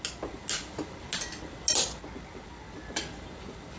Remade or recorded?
recorded